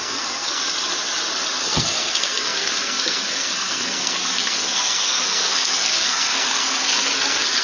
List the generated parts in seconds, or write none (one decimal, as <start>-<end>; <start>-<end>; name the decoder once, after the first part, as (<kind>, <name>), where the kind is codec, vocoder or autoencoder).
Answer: 0.0-0.6 (codec, SNAC); 1.6-7.6